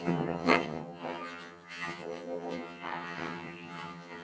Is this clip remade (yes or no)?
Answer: yes